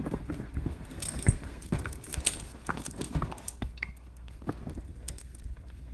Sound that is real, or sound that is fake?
fake